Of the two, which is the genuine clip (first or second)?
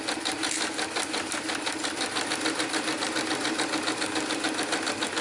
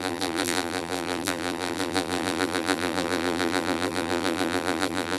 first